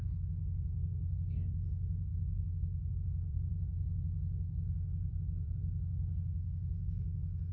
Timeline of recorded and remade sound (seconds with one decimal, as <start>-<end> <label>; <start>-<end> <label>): 0.0-7.5 remade